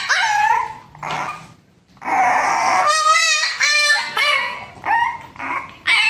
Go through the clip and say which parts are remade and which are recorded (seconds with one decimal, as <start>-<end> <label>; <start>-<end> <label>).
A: 0.0-2.5 recorded; 2.5-4.7 remade; 4.7-6.1 recorded